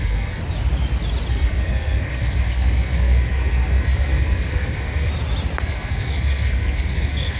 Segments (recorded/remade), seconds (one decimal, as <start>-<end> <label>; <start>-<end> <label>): 0.0-0.4 remade; 0.4-1.3 recorded; 1.3-5.1 remade; 5.1-5.6 recorded; 5.6-7.4 remade